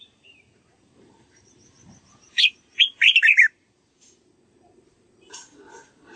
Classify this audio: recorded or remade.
remade